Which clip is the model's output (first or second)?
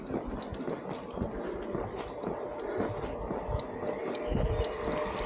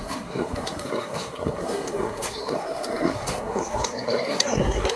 second